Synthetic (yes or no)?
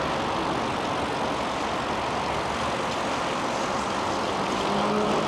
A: no